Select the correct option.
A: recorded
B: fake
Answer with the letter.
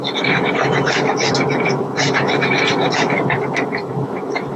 B